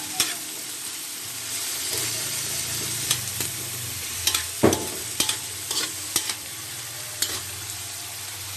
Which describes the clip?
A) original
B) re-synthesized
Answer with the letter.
B